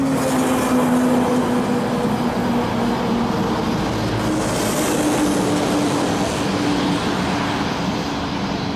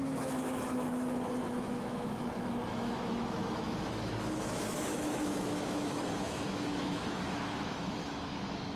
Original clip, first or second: first